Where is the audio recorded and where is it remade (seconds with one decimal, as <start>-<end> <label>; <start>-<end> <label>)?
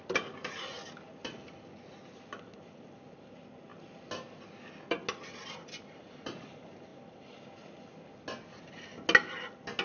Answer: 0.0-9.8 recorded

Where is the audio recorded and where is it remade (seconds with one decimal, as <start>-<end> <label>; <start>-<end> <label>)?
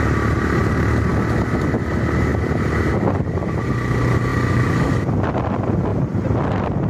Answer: 0.0-5.9 recorded; 5.9-6.5 remade; 6.5-6.9 recorded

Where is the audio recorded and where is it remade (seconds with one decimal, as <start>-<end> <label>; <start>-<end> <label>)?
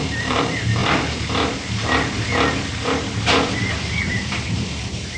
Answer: 0.0-0.8 remade; 0.8-3.9 recorded; 3.9-5.2 remade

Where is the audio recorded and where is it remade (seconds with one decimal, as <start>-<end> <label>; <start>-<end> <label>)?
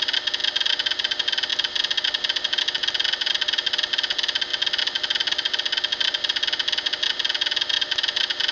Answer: 0.0-8.5 recorded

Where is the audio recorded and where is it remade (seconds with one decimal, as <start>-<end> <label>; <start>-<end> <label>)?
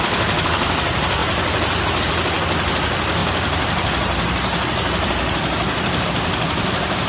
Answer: 0.0-1.2 remade; 1.2-2.0 recorded; 2.0-3.2 remade; 3.2-6.0 recorded; 6.0-7.1 remade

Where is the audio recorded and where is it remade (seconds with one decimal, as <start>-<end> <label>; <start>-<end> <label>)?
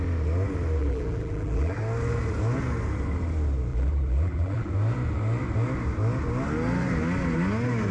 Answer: 0.0-0.8 recorded; 0.8-1.8 remade; 1.8-3.7 recorded; 3.7-4.7 remade; 4.7-7.9 recorded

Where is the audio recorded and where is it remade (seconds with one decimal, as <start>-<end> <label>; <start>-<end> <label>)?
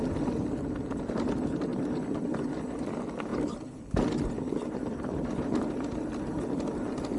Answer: 0.0-1.7 recorded; 1.7-2.7 remade; 2.7-7.2 recorded